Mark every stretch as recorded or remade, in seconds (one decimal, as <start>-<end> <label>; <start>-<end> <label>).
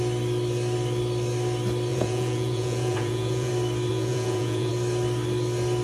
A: 0.0-1.9 recorded; 1.9-3.5 remade; 3.5-3.9 recorded; 3.9-4.7 remade; 4.7-5.8 recorded